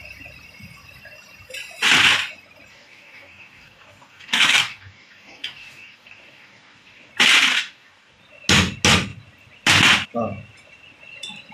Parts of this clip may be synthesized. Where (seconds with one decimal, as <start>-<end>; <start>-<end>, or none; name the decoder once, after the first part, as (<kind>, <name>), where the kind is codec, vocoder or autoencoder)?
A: 2.7-7.1 (codec, DAC); 7.5-8.2